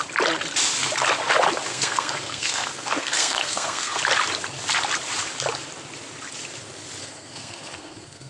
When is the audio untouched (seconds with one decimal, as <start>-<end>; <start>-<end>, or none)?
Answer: 0.0-1.7; 4.0-7.0